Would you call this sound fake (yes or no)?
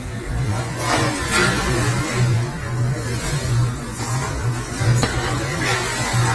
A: yes